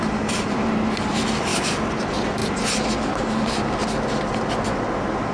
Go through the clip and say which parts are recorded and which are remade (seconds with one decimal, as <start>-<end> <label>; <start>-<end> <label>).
0.0-1.5 remade; 1.5-2.0 recorded; 2.0-2.4 remade; 2.4-3.2 recorded; 3.2-3.8 remade; 3.8-4.7 recorded; 4.7-5.3 remade